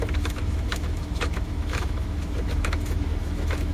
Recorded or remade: remade